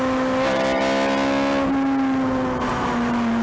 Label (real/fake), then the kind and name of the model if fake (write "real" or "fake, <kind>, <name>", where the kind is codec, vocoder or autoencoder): real